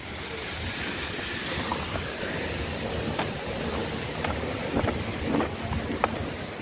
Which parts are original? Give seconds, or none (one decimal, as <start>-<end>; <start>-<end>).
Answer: 0.0-6.6